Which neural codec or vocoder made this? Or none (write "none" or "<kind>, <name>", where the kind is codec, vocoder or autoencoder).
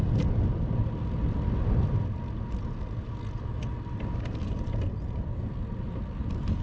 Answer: none